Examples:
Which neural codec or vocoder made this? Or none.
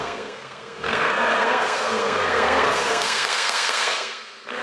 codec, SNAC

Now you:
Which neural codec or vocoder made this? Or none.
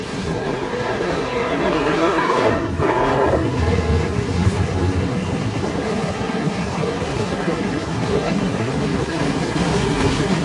codec, SNAC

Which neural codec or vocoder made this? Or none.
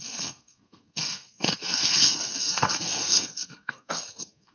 codec, SNAC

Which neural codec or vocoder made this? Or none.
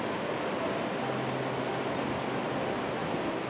none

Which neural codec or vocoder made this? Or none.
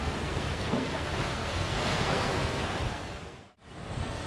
codec, SNAC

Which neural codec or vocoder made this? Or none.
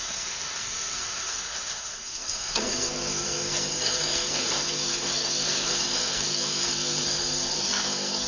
codec, SNAC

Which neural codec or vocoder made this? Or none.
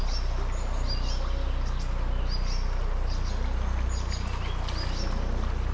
none